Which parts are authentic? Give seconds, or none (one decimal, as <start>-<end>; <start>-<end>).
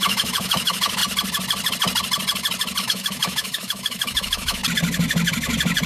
1.0-2.8; 4.6-5.9